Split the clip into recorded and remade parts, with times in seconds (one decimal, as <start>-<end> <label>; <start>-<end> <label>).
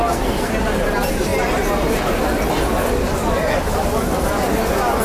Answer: 0.0-0.5 remade; 0.5-5.0 recorded